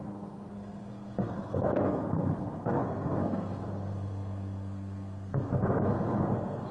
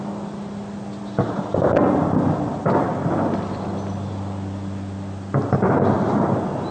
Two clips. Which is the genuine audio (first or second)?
second